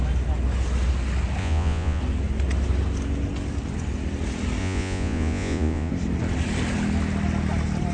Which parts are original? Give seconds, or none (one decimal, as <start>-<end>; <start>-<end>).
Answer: 0.0-1.4; 2.0-4.6; 5.9-7.9